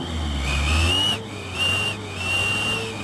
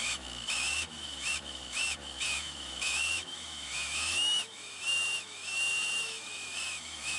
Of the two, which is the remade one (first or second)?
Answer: second